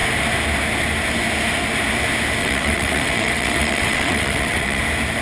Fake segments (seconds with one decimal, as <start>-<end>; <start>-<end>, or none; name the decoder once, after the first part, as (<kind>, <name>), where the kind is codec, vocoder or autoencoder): 2.4-4.8 (vocoder, WaveNeXt)